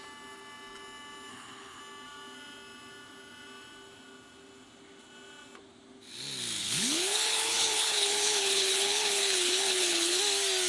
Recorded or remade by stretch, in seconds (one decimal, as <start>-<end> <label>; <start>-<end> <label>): 0.0-1.3 recorded; 1.3-1.8 remade; 1.8-6.6 recorded; 6.6-10.2 remade; 10.2-10.7 recorded